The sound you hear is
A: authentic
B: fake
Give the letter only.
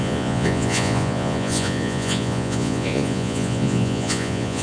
B